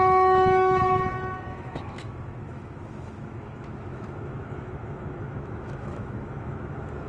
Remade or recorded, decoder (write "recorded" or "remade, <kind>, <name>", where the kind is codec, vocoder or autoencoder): remade, autoencoder, DAC-VAE